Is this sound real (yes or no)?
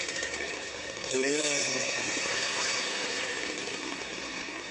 no